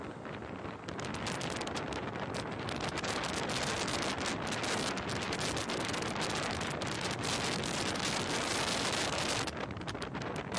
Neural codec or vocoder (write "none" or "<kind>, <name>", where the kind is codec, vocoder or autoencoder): none